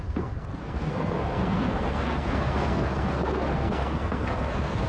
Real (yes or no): no